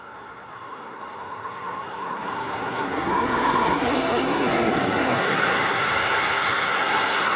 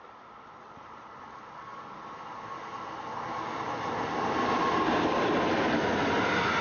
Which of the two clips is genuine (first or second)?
second